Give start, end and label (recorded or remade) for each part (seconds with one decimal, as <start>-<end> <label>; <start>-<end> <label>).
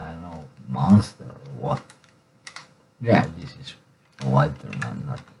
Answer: 0.0-3.2 remade; 3.2-5.4 recorded